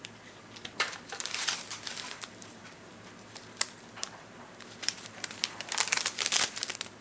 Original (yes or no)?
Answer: no